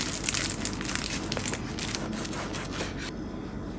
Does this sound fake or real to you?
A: real